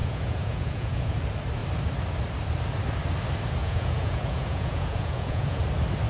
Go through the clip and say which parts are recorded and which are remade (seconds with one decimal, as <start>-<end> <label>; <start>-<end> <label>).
0.0-1.1 remade; 1.1-3.6 recorded; 3.6-5.6 remade; 5.6-6.1 recorded